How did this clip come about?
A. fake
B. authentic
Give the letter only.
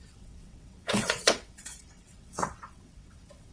A